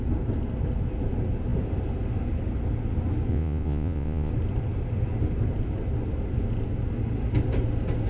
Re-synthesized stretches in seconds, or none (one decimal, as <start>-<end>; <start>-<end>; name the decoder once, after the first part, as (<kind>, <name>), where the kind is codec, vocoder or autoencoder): 3.3-4.3 (vocoder, Vocos)